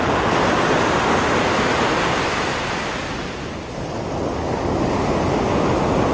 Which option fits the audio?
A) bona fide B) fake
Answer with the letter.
A